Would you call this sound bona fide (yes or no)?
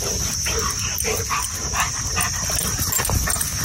yes